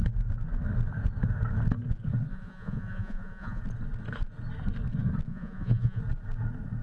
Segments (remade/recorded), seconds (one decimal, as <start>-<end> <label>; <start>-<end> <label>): 0.0-2.3 recorded; 2.3-3.6 remade; 3.6-5.3 recorded; 5.3-6.0 remade; 6.0-6.8 recorded